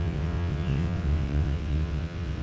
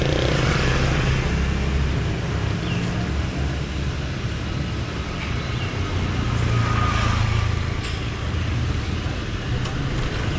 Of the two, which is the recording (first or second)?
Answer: second